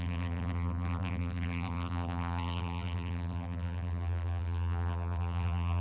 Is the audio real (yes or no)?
no